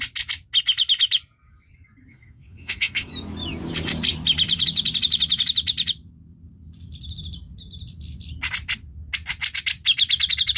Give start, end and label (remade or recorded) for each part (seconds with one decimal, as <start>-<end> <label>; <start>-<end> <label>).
0.0-2.1 recorded; 2.1-3.1 remade; 3.1-10.6 recorded